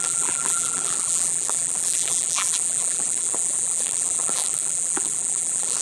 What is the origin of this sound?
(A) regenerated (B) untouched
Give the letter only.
A